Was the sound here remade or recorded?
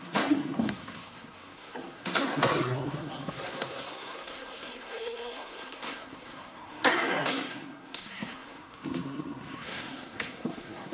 remade